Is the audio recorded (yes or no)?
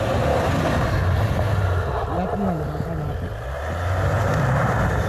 yes